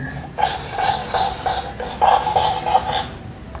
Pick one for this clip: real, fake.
real